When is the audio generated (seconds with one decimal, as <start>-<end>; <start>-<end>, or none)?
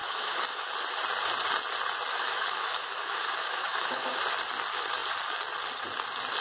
0.0-0.7; 2.1-4.2